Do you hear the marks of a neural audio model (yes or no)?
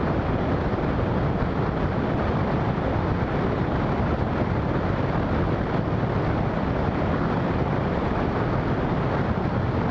no